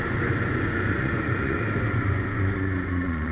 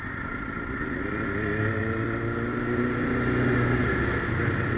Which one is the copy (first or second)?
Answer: first